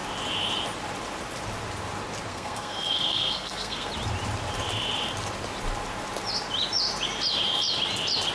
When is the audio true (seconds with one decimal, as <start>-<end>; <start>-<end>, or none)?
0.0-2.3; 3.9-8.3